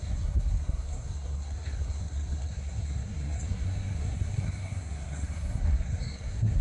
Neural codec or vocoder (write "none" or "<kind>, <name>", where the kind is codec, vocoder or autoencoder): codec, SNAC